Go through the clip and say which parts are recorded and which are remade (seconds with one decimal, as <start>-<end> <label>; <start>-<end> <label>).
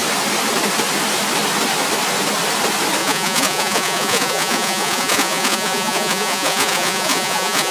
0.0-3.0 recorded; 3.0-7.7 remade